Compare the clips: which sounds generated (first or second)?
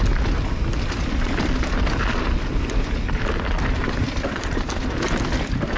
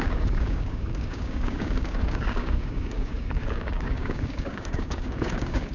second